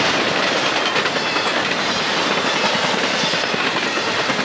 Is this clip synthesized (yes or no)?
no